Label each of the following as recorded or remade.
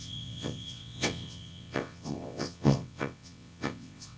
remade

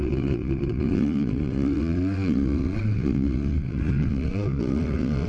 remade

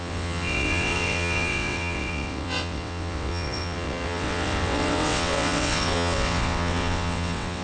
remade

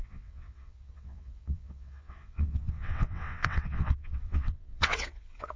remade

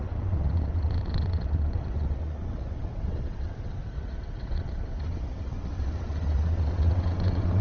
remade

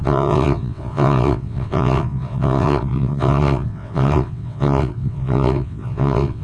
remade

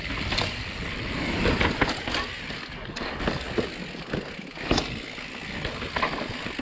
recorded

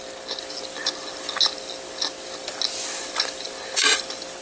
recorded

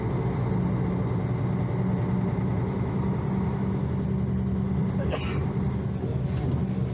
recorded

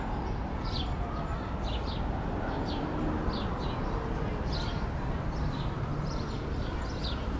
recorded